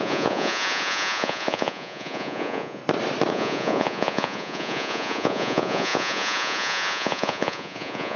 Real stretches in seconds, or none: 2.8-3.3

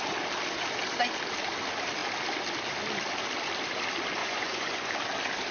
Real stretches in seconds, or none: 0.0-4.2; 4.9-5.5

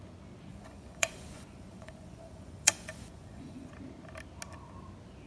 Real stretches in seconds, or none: 0.0-0.5; 3.7-5.3

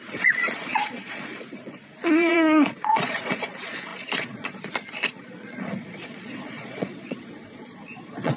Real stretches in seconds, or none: none

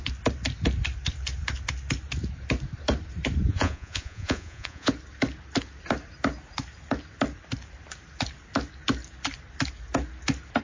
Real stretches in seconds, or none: 0.0-3.5; 4.9-10.6